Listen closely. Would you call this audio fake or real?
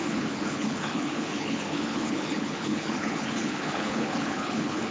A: fake